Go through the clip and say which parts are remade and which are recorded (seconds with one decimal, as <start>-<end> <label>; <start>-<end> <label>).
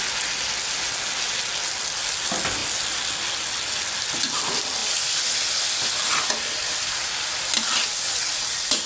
0.0-4.8 recorded; 4.8-7.4 remade; 7.4-8.9 recorded